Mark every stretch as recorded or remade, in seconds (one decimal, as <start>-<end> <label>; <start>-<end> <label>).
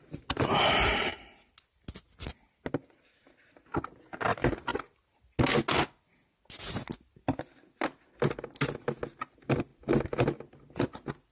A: 0.0-11.3 recorded